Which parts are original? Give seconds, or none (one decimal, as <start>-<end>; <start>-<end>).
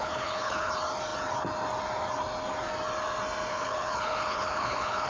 0.7-3.5